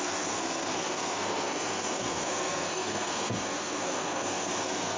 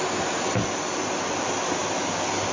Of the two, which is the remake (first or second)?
first